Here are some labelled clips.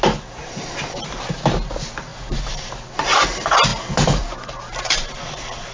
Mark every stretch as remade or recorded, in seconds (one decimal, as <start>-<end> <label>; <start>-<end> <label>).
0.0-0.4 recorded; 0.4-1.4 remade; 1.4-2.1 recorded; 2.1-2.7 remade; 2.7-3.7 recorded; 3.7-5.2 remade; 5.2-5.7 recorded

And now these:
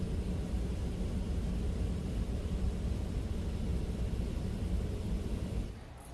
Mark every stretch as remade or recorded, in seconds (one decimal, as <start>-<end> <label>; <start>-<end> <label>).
0.0-6.1 recorded

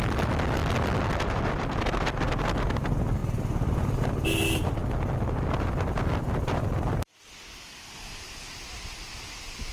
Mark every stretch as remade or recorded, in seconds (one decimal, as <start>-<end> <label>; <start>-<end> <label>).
0.0-9.7 recorded

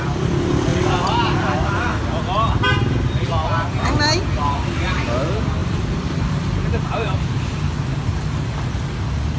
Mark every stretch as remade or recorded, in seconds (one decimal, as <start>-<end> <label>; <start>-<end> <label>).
0.0-5.6 recorded; 5.6-8.5 remade; 8.5-9.4 recorded

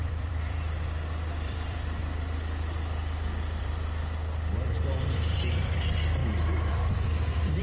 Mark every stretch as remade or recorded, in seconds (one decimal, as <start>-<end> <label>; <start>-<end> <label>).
0.0-2.0 remade; 2.0-3.6 recorded; 3.6-6.2 remade; 6.2-6.7 recorded; 6.7-7.6 remade

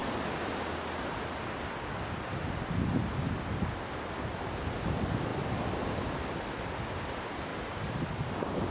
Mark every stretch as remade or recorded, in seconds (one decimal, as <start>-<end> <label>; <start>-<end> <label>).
0.0-5.3 recorded; 5.3-6.4 remade; 6.4-7.5 recorded; 7.5-8.7 remade